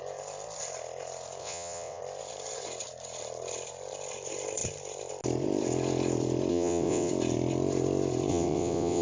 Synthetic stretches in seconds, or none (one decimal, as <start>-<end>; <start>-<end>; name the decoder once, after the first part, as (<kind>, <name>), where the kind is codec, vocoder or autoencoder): 1.4-2.0 (vocoder, WaveNeXt); 6.5-7.1; 8.3-9.0